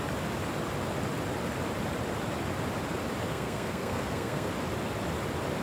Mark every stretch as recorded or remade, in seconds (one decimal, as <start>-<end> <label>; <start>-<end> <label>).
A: 0.0-3.3 recorded; 3.3-4.5 remade; 4.5-5.6 recorded

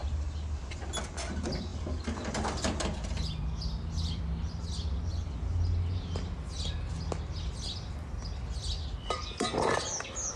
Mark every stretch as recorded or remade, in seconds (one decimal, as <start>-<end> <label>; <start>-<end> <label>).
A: 0.0-1.7 recorded; 1.7-4.2 remade; 4.2-10.4 recorded

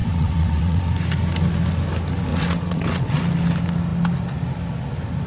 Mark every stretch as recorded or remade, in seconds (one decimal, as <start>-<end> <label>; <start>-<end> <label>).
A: 0.0-0.9 remade; 0.9-2.3 recorded; 2.3-3.2 remade; 3.2-5.3 recorded

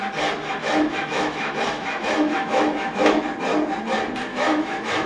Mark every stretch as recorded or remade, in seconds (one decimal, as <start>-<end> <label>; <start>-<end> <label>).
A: 0.0-0.6 recorded; 0.6-3.2 remade; 3.2-4.3 recorded; 4.3-5.1 remade